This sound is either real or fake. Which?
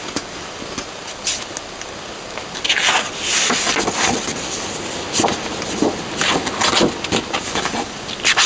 real